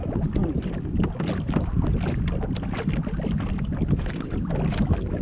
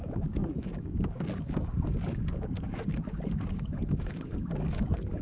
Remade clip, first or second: second